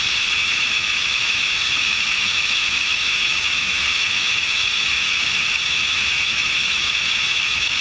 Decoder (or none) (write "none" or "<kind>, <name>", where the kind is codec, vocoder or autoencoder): autoencoder, DAC-VAE